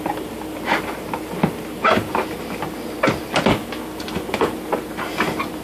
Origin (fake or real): real